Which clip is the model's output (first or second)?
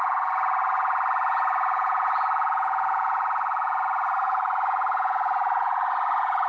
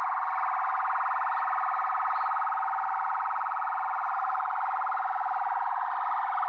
first